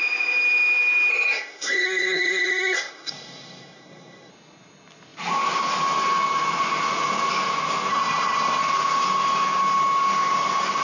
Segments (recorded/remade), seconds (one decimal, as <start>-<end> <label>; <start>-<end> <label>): 0.0-1.1 recorded; 1.1-4.3 remade; 4.3-7.9 recorded; 7.9-8.6 remade; 8.6-10.8 recorded